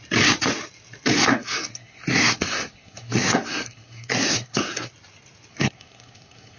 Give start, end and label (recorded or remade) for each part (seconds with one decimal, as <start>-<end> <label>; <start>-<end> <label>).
0.0-1.3 recorded; 1.3-4.9 remade; 4.9-5.5 recorded; 5.5-6.6 remade